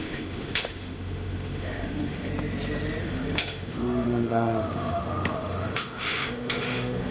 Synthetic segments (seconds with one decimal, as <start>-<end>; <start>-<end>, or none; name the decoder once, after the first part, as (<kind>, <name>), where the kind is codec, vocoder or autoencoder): 0.0-2.3 (autoencoder, DAC-VAE); 3.0-7.1